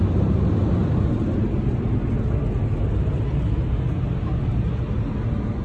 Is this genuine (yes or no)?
yes